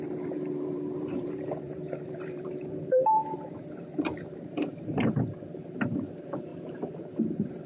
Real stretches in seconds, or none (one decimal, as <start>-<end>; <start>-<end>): 6.5-7.0